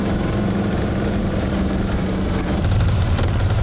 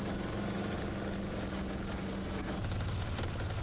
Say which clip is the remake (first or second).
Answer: first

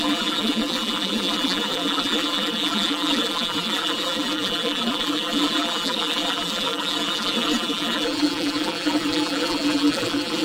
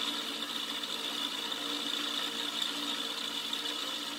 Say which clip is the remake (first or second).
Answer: first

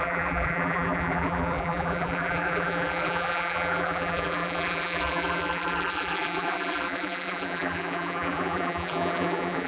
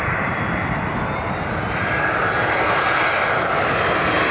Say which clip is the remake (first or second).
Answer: first